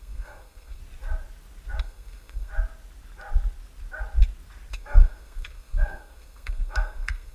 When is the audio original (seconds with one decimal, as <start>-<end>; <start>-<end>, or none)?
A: 0.8-1.8; 2.5-4.7